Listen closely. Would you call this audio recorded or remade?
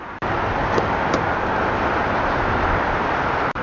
recorded